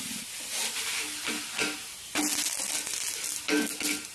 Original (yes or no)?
yes